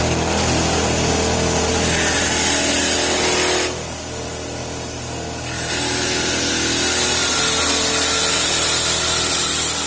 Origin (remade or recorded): recorded